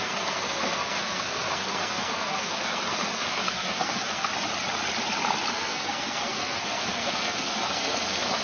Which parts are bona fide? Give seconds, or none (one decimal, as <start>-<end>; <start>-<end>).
4.3-5.5